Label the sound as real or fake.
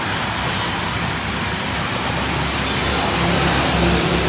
real